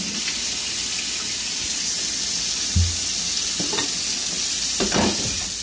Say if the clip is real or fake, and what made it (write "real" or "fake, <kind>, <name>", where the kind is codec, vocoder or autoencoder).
real